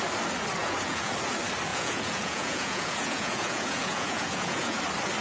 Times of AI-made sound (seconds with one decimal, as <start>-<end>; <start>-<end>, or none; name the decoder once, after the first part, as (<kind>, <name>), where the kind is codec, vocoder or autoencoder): 0.6-1.1 (vocoder, Vocos); 1.7-4.8